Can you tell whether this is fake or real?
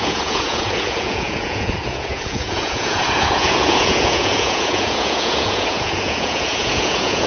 fake